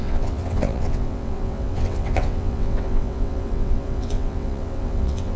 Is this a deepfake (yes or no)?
yes